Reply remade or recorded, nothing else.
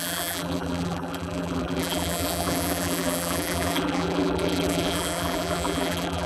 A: remade